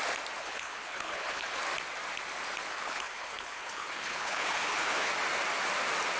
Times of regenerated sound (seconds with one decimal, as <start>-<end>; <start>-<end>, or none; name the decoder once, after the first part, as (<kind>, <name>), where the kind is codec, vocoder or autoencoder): 0.4-1.6 (codec, HILCodec); 2.7-5.1